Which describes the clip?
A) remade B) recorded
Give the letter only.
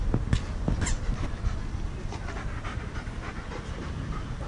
B